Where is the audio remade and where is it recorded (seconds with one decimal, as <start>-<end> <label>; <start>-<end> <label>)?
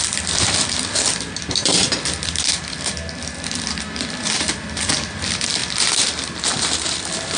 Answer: 0.0-7.4 remade